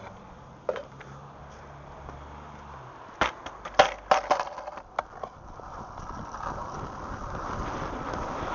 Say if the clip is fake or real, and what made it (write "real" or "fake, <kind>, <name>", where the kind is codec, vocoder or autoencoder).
real